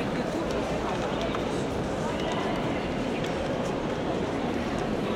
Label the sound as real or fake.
fake